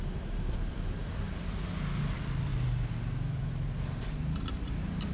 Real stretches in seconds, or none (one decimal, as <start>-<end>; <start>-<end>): 2.5-4.0